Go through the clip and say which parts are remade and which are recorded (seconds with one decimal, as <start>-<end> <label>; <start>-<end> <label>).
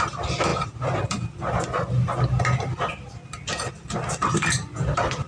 0.0-5.3 recorded